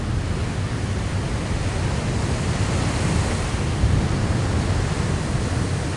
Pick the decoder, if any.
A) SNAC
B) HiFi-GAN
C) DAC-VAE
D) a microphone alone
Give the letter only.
D